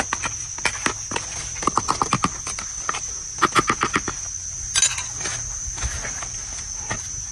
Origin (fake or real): real